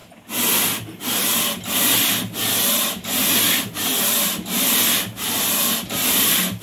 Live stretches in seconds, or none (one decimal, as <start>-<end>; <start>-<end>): 0.0-6.6